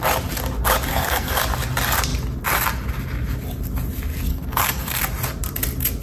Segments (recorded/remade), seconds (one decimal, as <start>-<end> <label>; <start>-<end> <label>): 0.0-0.9 recorded; 0.9-1.4 remade; 1.4-4.3 recorded; 4.3-5.0 remade; 5.0-6.0 recorded